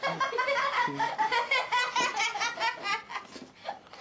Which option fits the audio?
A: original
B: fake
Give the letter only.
A